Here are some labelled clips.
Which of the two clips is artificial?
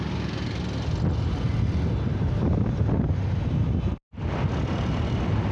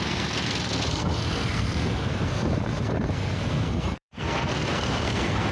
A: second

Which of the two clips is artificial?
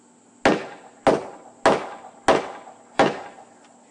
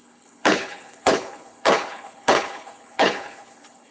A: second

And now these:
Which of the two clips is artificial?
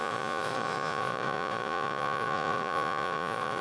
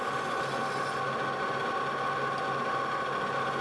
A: first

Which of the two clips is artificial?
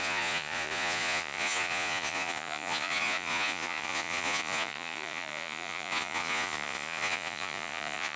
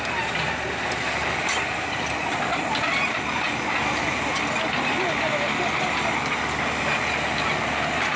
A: first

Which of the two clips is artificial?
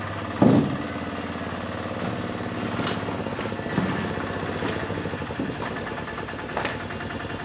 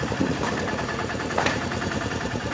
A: second